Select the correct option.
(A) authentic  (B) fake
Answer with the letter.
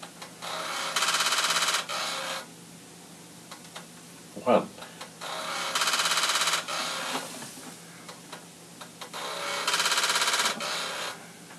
A